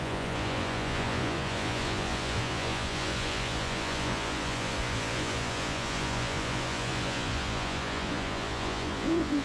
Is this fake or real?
fake